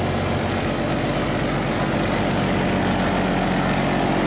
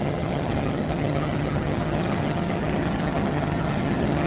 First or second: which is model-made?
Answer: second